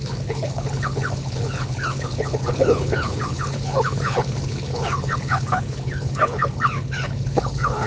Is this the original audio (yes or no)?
no